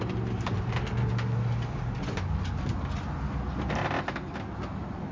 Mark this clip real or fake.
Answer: real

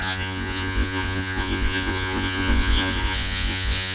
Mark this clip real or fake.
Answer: fake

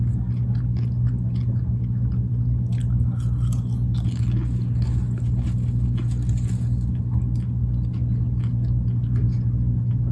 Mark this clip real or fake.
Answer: real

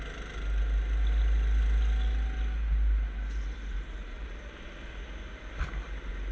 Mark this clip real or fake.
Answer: real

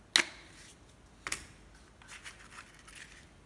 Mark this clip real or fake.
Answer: real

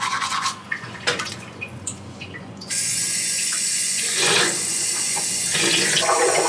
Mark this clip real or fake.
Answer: fake